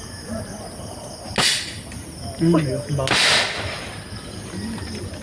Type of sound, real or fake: real